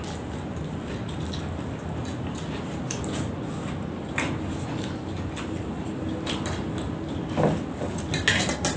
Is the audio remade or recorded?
recorded